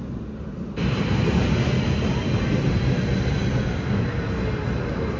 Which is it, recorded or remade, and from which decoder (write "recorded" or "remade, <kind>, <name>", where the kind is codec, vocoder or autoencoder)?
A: recorded